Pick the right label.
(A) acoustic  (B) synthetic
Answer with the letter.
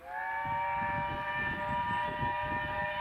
A